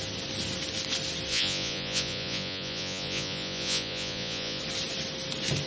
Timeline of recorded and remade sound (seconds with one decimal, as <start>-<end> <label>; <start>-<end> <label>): 0.0-1.3 recorded; 1.3-4.6 remade; 4.6-5.7 recorded